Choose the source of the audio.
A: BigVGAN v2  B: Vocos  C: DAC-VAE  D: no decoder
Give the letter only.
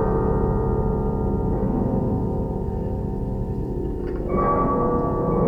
A